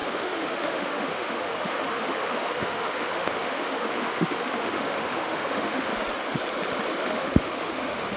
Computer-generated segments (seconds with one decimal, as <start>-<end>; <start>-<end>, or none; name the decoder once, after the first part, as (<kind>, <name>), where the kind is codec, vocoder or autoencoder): 0.0-5.9 (autoencoder, DAC-VAE); 7.1-8.2